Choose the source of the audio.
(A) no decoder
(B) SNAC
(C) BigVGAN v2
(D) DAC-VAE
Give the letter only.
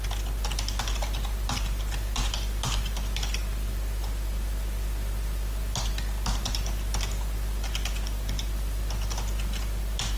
A